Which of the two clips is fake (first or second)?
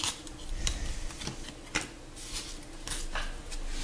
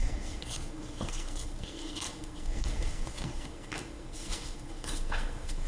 second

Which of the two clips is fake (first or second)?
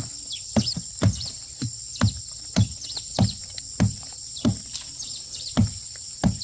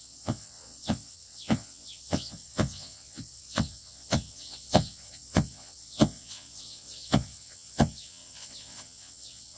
second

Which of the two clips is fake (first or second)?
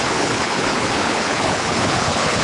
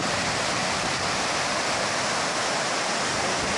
first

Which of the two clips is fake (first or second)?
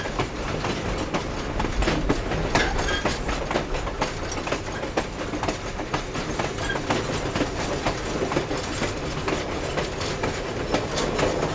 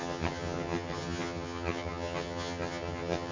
second